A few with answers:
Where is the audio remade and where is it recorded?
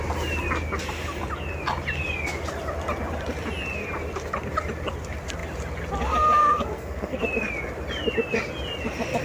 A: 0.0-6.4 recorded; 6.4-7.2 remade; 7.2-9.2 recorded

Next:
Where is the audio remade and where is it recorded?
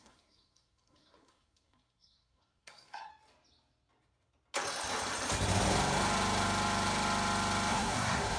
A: 0.0-3.1 remade; 3.1-7.7 recorded; 7.7-8.4 remade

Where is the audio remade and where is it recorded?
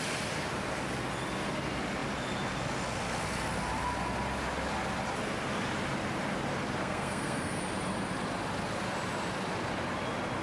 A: 0.0-6.8 recorded; 6.8-7.6 remade; 7.6-10.4 recorded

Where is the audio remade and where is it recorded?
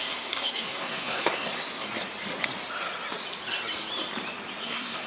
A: 0.0-1.5 remade; 1.5-4.6 recorded; 4.6-5.1 remade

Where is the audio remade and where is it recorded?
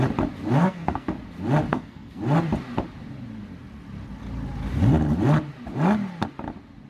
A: 0.0-0.6 recorded; 0.6-1.1 remade; 1.1-1.7 recorded; 1.7-2.2 remade; 2.2-6.9 recorded